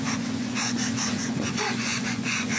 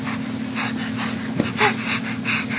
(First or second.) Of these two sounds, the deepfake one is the first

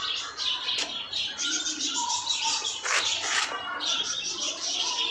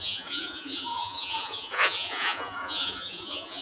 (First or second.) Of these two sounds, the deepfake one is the second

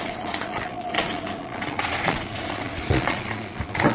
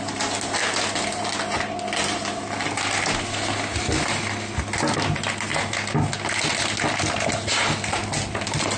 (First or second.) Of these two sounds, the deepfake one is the first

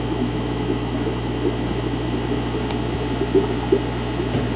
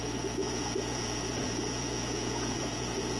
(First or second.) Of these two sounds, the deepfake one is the second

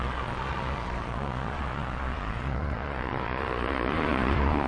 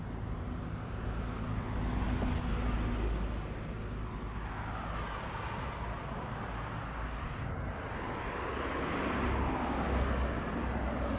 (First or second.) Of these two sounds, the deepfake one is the first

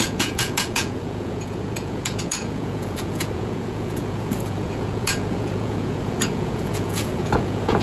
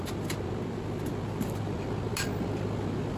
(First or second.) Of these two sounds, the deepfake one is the first